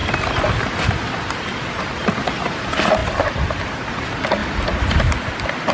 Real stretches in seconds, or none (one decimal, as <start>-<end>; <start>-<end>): 0.0-5.7